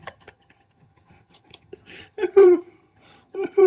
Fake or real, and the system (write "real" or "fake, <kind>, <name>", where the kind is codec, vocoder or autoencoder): fake, vocoder, HiFi-GAN